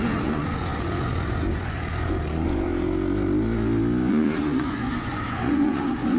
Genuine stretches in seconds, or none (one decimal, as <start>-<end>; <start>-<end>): 2.7-4.1